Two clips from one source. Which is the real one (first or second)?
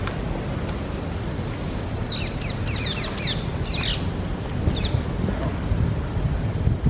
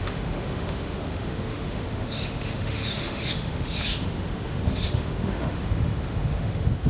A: first